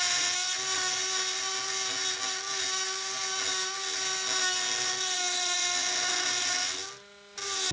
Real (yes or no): yes